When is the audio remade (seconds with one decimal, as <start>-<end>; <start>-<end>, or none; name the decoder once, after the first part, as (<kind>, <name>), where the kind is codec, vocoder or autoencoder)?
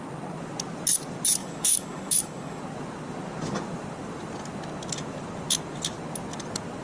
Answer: 1.4-2.6 (codec, DAC)